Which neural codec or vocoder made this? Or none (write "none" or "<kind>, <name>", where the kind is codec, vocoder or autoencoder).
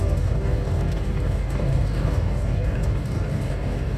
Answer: codec, DAC